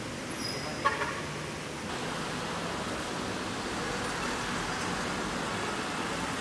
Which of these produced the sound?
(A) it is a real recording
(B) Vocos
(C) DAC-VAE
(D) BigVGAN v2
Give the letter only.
A